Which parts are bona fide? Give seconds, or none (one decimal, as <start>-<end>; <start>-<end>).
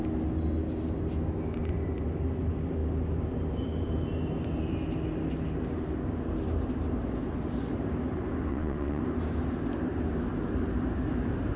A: 0.0-8.5; 9.0-11.6